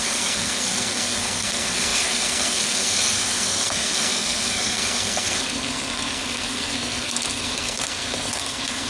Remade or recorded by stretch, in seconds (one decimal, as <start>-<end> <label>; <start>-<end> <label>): 0.0-8.9 remade